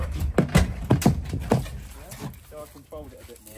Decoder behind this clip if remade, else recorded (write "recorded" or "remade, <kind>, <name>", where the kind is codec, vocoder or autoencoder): recorded